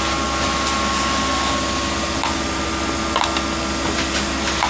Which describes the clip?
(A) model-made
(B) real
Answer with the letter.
B